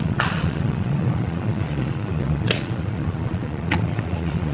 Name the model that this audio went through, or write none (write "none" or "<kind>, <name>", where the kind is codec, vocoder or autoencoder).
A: vocoder, Vocos